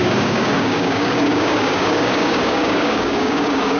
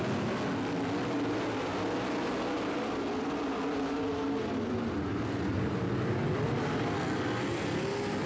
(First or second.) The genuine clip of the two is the second